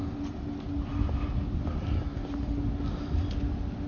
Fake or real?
real